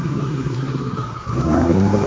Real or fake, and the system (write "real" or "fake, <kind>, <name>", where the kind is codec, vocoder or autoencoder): fake, codec, SNAC